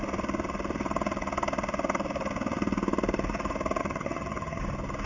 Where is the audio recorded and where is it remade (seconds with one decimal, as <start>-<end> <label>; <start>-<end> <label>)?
0.0-3.8 recorded; 3.8-4.6 remade; 4.6-5.1 recorded